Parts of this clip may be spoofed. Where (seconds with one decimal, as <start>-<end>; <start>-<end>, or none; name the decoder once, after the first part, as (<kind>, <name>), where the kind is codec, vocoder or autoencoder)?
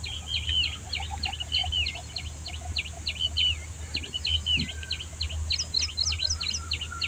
none